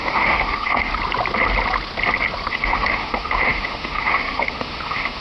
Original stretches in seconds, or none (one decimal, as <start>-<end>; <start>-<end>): 0.9-2.5